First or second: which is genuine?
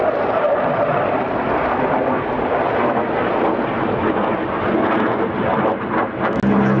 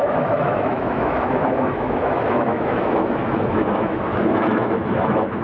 first